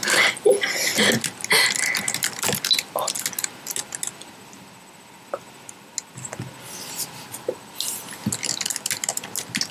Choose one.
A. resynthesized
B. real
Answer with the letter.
B